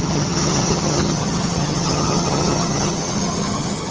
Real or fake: fake